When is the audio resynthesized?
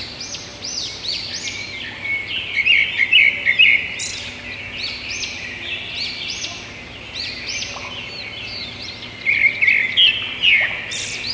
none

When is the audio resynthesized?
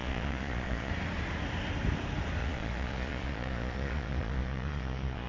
0.0-0.9; 2.4-5.3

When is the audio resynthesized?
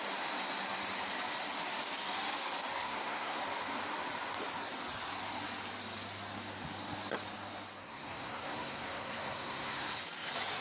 2.8-3.4; 7.8-10.0